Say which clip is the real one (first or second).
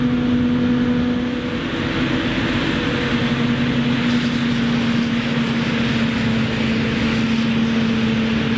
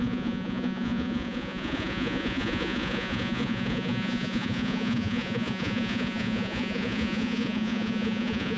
first